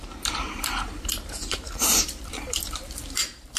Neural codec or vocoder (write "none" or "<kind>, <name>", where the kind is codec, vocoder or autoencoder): vocoder, BigVGAN v2